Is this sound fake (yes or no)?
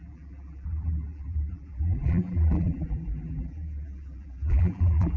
yes